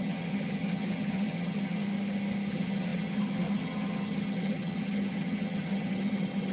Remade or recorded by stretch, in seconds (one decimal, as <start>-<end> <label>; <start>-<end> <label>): 0.0-1.8 remade; 1.8-2.5 recorded; 2.5-6.5 remade